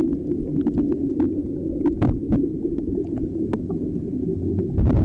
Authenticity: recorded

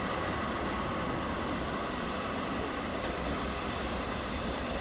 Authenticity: remade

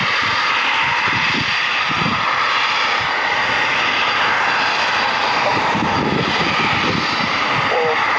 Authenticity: recorded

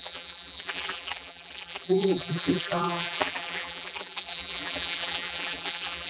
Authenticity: remade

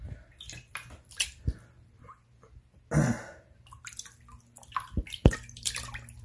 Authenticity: recorded